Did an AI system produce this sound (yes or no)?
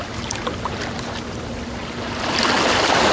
no